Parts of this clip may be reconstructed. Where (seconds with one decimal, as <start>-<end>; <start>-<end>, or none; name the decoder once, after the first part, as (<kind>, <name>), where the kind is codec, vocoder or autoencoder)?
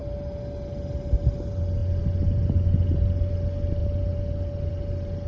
none